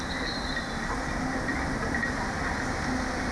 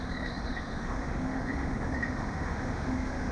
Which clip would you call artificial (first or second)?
second